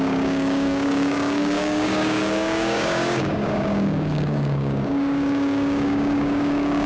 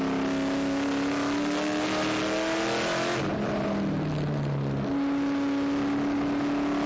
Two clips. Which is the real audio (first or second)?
second